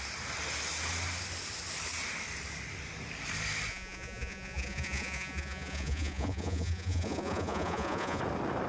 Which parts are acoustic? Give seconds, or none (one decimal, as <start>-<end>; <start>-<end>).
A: 0.0-3.7; 8.2-8.7